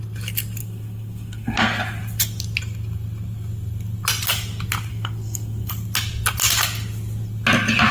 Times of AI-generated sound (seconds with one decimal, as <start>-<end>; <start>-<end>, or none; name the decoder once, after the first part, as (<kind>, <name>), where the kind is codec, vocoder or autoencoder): 0.6-1.8 (codec, SNAC); 4.9-5.7